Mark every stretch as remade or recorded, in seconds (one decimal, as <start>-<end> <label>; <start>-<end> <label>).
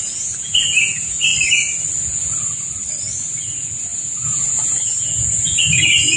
0.0-1.3 remade; 1.3-2.0 recorded; 2.0-2.8 remade; 2.8-3.4 recorded; 3.4-6.2 remade